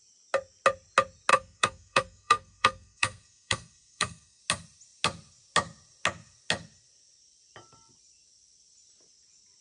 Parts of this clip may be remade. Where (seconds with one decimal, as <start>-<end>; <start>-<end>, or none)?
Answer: 1.3-4.4